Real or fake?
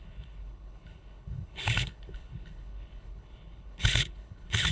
fake